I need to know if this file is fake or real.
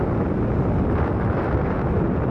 real